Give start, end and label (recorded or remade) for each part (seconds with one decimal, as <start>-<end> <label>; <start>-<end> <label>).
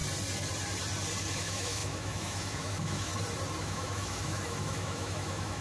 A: 0.0-1.3 recorded; 1.3-3.1 remade; 3.1-3.6 recorded; 3.6-5.6 remade